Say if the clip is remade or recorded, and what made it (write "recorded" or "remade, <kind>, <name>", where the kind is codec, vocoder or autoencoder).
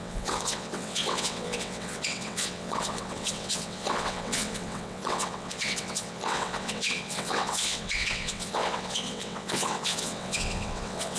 remade, vocoder, WaveNeXt